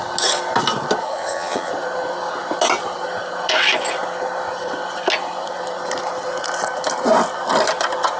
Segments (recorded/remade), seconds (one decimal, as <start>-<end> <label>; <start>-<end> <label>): 0.0-1.0 recorded; 1.0-1.7 remade; 1.7-8.2 recorded

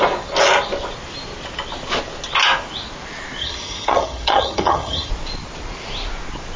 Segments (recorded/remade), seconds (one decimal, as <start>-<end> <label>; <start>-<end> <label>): 0.0-3.4 recorded; 3.4-5.1 remade; 5.1-6.6 recorded